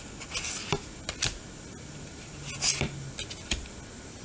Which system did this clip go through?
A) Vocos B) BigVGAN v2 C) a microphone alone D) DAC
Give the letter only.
C